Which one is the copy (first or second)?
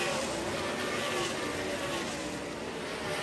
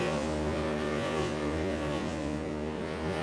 second